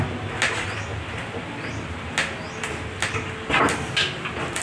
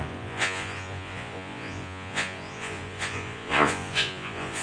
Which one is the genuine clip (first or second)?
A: first